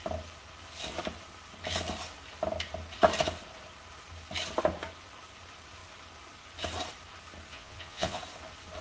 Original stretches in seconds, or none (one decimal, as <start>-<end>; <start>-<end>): 0.0-7.5; 8.2-8.8